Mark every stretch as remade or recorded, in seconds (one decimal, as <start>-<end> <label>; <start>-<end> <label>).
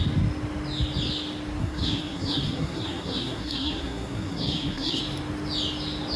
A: 0.0-1.6 recorded; 1.6-5.0 remade; 5.0-6.2 recorded